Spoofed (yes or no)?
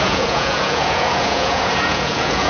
yes